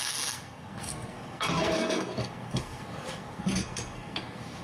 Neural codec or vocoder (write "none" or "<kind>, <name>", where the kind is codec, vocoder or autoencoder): codec, SNAC